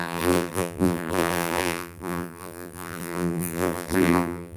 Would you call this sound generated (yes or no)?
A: yes